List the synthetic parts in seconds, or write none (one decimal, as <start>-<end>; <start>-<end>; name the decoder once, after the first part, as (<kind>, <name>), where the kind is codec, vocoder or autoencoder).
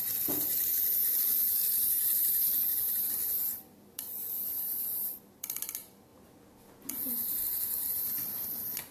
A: 0.0-6.1 (vocoder, BigVGAN v2); 7.1-8.9